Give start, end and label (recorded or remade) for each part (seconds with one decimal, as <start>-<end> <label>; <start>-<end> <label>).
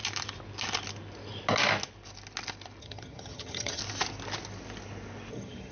0.0-2.8 recorded; 2.8-3.8 remade; 3.8-5.3 recorded; 5.3-5.7 remade